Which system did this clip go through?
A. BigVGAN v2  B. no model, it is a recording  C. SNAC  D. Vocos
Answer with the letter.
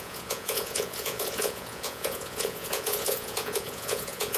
D